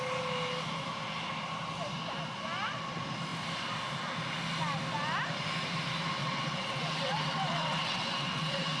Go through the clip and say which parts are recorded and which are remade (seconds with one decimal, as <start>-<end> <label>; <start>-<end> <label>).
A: 0.0-6.2 recorded; 6.2-8.8 remade